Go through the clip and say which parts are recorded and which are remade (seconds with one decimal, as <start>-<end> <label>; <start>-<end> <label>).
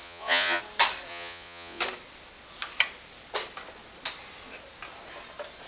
0.0-0.6 remade; 0.6-1.1 recorded; 1.1-1.8 remade; 1.8-5.7 recorded